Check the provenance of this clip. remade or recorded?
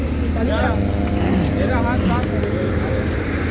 recorded